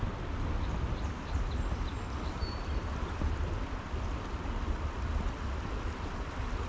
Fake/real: real